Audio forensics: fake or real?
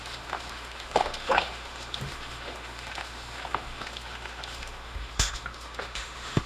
fake